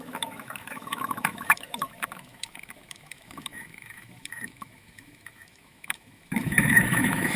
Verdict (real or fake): fake